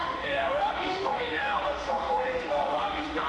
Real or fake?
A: fake